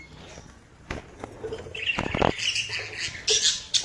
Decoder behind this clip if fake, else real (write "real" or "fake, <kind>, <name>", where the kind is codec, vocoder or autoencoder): real